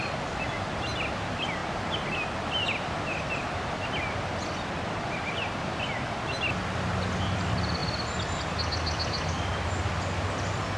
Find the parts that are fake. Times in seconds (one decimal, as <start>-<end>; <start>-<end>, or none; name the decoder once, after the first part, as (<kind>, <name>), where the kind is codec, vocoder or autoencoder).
none